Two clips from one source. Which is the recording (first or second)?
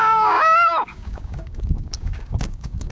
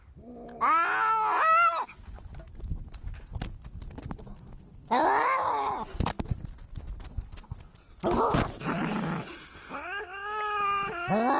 second